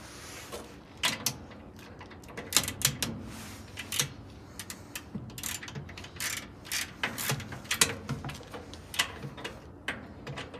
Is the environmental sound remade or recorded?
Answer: recorded